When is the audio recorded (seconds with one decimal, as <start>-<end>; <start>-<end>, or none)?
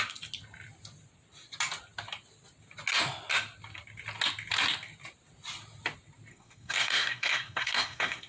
0.0-6.3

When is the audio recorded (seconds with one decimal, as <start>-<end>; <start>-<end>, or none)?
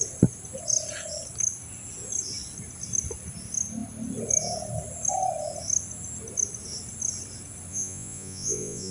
0.0-7.7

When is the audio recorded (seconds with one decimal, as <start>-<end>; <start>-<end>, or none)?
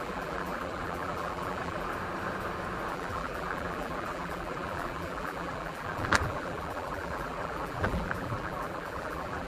1.9-2.9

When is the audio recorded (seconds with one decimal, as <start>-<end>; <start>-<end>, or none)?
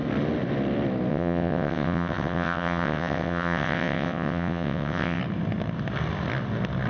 0.0-1.1; 5.2-6.9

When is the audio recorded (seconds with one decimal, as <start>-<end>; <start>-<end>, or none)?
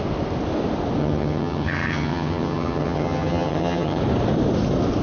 0.0-1.0; 4.0-5.0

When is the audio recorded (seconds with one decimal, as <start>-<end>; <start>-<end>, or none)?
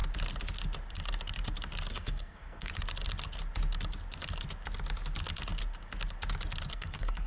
0.0-1.9; 2.7-6.7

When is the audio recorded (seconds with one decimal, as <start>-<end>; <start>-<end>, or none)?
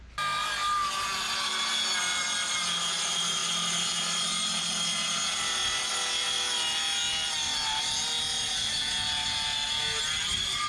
0.0-10.7